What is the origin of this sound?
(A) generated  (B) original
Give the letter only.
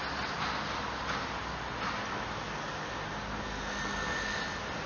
B